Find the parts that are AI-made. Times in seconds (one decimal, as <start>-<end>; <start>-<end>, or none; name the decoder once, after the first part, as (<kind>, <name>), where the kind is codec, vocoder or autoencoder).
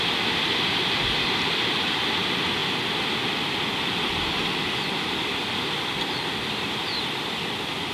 none